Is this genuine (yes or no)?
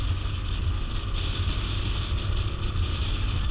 yes